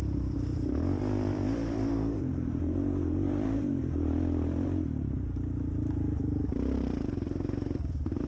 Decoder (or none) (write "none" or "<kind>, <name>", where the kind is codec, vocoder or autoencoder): vocoder, BigVGAN v2